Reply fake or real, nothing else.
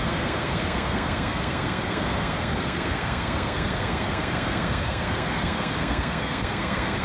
fake